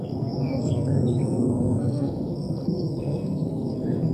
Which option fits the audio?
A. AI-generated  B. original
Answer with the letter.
A